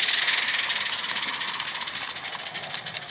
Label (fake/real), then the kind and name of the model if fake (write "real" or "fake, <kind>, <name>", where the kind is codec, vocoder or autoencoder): real